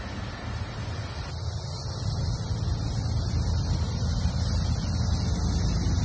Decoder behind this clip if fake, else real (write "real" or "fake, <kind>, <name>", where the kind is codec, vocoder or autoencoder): real